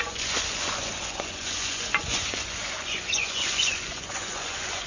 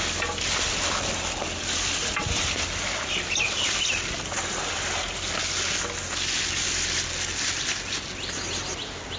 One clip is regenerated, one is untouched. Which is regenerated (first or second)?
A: first